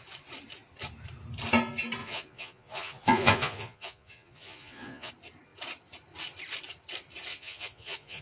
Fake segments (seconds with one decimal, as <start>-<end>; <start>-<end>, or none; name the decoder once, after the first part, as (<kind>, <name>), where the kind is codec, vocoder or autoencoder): 2.0-5.1 (vocoder, Vocos); 7.3-8.2